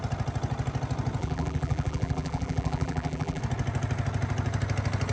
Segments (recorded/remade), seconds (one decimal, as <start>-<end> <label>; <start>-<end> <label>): 0.0-1.2 recorded; 1.2-3.4 remade; 3.4-5.1 recorded